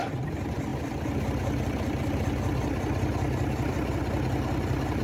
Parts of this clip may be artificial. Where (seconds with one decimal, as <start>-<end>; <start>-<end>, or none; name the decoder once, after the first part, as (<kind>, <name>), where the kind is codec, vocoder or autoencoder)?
none